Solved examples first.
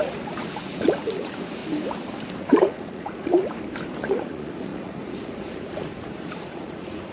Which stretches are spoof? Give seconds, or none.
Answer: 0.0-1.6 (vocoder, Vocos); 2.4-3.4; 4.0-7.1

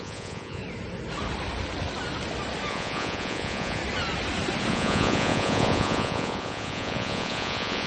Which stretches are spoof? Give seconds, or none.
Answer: 0.0-0.6 (vocoder, Vocos); 2.7-3.8; 4.7-7.9

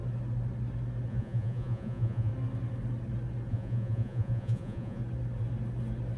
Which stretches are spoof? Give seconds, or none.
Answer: 1.1-2.3 (vocoder, Vocos); 3.5-5.0

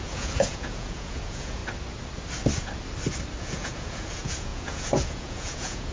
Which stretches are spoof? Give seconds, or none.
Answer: 0.0-1.6 (vocoder, Vocos); 3.4-5.9

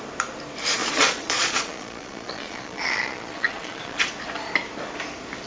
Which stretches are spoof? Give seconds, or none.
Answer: 0.8-4.1 (vocoder, Vocos)

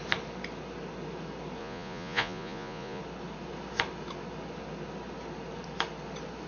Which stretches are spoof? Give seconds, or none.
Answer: 1.6-3.0 (vocoder, Vocos)